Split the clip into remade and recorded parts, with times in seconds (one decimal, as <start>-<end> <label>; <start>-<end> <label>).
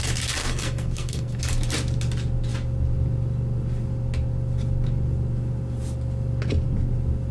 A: 0.0-0.4 recorded; 0.4-1.4 remade; 1.4-7.3 recorded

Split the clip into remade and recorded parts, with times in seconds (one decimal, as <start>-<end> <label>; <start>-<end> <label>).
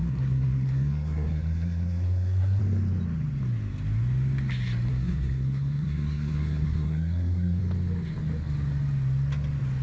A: 0.0-2.6 remade; 2.6-4.9 recorded; 4.9-7.6 remade; 7.6-9.8 recorded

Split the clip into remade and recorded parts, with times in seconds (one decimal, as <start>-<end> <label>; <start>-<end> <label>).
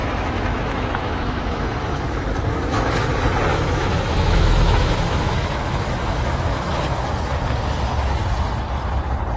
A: 0.0-3.1 remade; 3.1-3.5 recorded; 3.5-7.1 remade; 7.1-9.4 recorded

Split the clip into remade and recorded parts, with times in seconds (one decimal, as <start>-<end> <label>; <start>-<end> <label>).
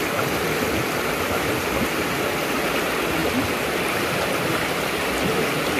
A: 0.0-5.8 recorded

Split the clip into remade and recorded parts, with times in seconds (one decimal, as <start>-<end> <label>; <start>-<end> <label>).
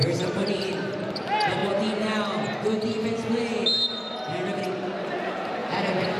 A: 0.0-1.2 remade; 1.2-5.6 recorded; 5.6-6.2 remade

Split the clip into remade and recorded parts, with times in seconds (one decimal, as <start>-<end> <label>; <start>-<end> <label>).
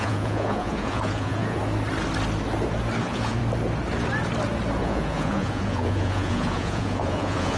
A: 0.0-1.6 remade; 1.6-3.0 recorded; 3.0-3.4 remade; 3.4-4.8 recorded; 4.8-7.6 remade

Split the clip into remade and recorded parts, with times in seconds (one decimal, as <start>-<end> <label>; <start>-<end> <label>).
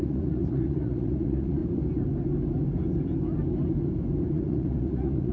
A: 0.0-1.6 remade; 1.6-4.3 recorded; 4.3-5.3 remade